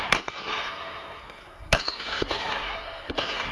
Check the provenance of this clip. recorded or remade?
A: remade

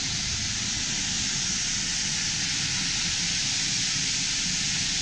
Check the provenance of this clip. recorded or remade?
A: recorded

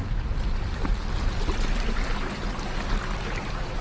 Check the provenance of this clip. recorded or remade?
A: recorded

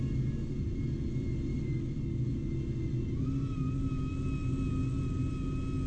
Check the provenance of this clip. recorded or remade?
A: recorded